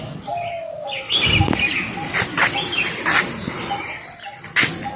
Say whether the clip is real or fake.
real